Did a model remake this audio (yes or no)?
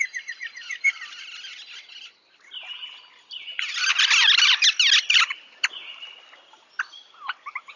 no